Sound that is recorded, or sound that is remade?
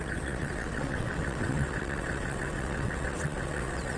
remade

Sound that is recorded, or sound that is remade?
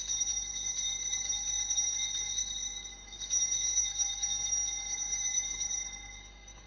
remade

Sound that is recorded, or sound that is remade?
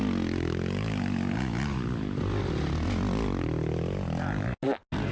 recorded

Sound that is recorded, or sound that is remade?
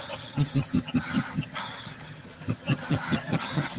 remade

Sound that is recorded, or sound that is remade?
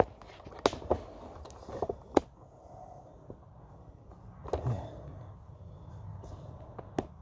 recorded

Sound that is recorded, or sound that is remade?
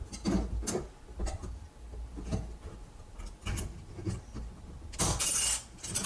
recorded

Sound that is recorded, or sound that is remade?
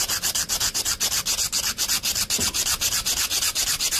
recorded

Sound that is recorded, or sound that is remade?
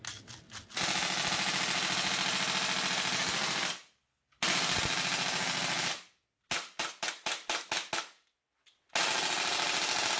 recorded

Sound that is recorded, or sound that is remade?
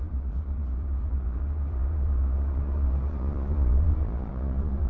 remade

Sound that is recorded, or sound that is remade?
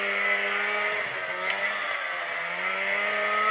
recorded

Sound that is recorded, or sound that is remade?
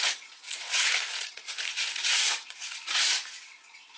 remade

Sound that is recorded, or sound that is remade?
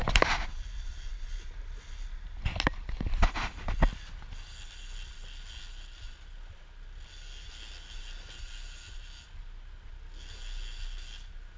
recorded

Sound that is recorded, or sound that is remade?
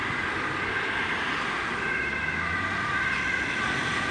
recorded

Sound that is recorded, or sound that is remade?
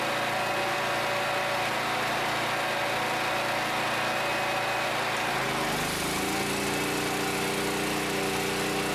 recorded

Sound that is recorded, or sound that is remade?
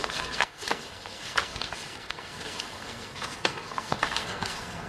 remade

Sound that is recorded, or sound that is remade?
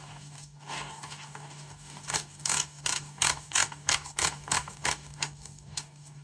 remade